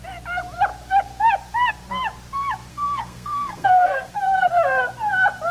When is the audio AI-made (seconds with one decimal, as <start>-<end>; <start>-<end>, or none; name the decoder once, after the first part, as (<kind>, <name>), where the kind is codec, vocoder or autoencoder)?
2.7-4.5 (codec, SNAC)